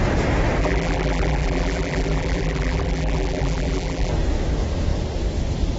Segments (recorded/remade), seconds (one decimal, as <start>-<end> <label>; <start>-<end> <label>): 0.0-0.6 recorded; 0.6-4.1 remade; 4.1-5.8 recorded